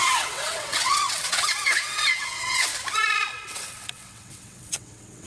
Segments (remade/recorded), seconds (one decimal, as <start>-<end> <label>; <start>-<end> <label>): 0.0-2.7 remade; 2.7-3.3 recorded; 3.3-5.3 remade

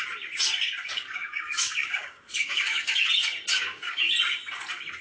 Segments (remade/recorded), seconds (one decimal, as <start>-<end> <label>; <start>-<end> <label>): 0.0-0.9 recorded; 0.9-3.1 remade; 3.1-3.5 recorded; 3.5-4.1 remade; 4.1-5.0 recorded

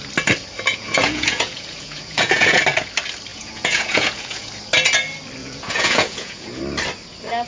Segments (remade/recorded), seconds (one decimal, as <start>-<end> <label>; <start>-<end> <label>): 0.0-0.7 recorded; 0.7-2.6 remade; 2.6-3.3 recorded; 3.3-4.5 remade; 4.5-5.4 recorded; 5.4-6.6 remade; 6.6-7.5 recorded

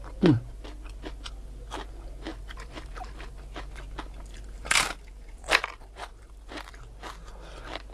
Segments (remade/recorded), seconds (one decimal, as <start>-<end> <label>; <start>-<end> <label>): 0.0-2.3 recorded; 2.3-3.4 remade; 3.4-4.3 recorded; 4.3-6.7 remade; 6.7-7.9 recorded

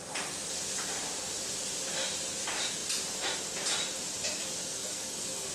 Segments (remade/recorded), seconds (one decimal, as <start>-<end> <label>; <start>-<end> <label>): 0.0-4.6 recorded; 4.6-5.5 remade

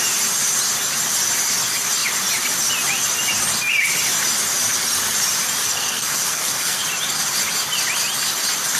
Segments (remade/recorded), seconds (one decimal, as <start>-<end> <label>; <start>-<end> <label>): 0.0-5.6 recorded; 5.6-6.8 remade; 6.8-8.8 recorded